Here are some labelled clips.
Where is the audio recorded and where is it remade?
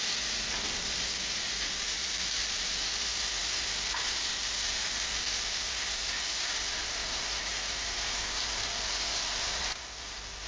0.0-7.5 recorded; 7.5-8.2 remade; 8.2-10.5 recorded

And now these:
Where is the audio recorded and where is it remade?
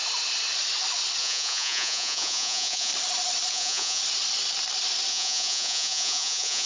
0.0-1.2 recorded; 1.2-2.9 remade; 2.9-3.5 recorded; 3.5-4.0 remade; 4.0-5.1 recorded; 5.1-6.7 remade